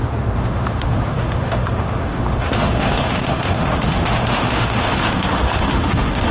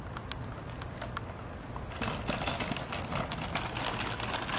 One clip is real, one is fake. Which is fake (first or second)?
first